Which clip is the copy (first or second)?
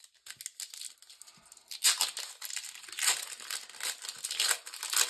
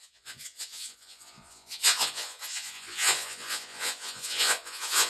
second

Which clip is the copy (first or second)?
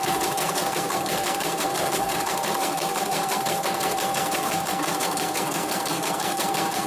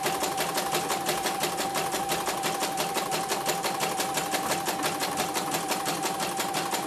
first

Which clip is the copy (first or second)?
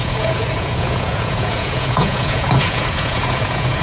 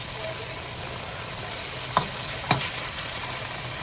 first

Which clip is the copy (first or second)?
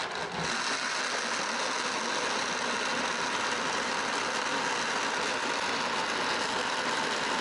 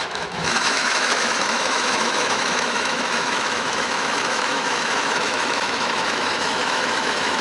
second